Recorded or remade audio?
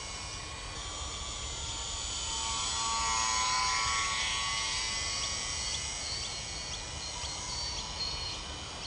recorded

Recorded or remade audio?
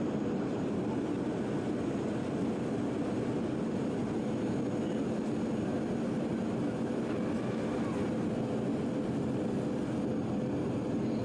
recorded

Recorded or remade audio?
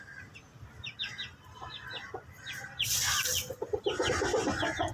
recorded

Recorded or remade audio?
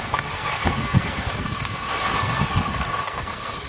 remade